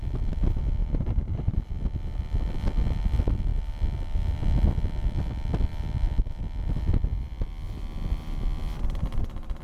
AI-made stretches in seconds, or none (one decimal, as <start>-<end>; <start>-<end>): 0.8-1.7